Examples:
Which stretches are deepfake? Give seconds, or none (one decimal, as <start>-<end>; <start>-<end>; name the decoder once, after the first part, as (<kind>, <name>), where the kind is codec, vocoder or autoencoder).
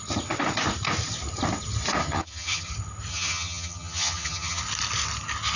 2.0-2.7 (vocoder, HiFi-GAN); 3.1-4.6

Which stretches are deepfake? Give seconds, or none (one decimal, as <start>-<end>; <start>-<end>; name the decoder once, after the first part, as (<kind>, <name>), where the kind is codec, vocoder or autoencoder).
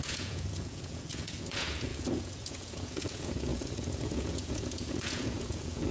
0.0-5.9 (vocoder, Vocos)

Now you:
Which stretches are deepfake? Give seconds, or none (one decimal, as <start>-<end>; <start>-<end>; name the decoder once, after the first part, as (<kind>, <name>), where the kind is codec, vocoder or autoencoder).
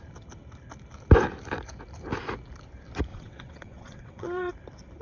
3.1-4.5 (vocoder, WaveNeXt)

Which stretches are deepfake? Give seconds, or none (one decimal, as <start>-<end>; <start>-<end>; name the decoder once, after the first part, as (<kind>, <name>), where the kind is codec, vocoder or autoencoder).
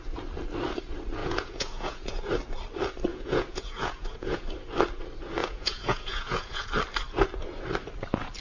1.2-2.2 (vocoder, Vocos); 3.1-4.4; 5.4-6.7